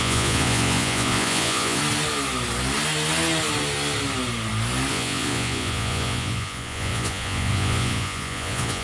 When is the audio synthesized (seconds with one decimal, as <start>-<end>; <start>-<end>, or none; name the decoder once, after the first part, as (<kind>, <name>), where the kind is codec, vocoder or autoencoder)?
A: 0.0-1.8 (vocoder, Vocos); 4.9-8.8